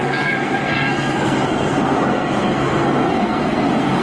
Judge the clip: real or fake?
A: fake